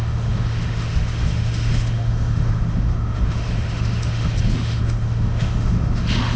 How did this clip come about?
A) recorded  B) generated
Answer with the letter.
B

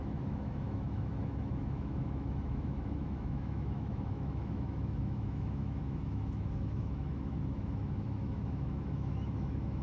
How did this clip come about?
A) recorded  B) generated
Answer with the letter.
B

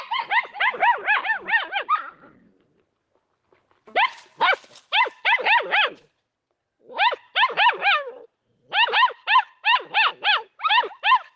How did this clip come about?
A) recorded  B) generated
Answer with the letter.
A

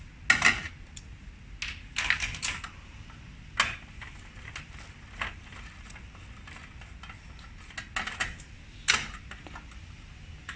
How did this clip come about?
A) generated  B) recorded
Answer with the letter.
B